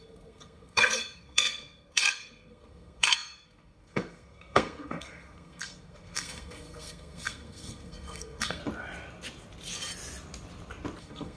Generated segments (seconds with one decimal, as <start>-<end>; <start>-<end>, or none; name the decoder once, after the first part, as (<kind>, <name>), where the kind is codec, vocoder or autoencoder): 0.0-8.6 (codec, SNAC); 11.0-11.4